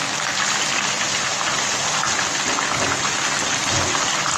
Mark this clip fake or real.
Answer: real